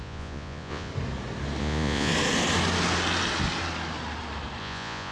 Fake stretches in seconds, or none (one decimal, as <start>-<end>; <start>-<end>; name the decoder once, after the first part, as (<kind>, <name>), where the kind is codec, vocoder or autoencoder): 0.0-0.9 (vocoder, Vocos); 1.6-2.1; 4.6-5.1